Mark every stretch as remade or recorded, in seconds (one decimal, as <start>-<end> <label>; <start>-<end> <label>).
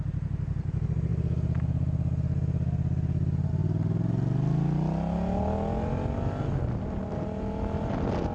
0.0-8.3 recorded